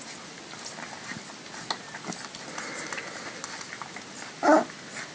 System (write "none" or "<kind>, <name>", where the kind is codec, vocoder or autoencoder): none